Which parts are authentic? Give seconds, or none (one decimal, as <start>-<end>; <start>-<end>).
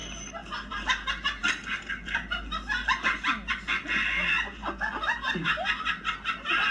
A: 0.0-1.4; 3.5-6.7